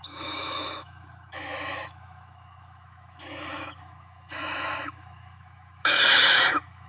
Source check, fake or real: fake